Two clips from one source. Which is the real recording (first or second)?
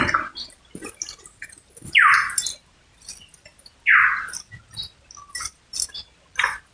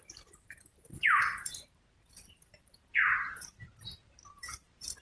first